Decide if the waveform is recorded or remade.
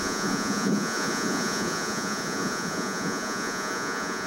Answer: remade